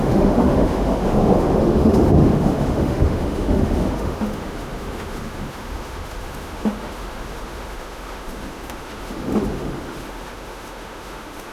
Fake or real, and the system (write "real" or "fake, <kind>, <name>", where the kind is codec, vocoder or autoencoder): fake, autoencoder, DAC-VAE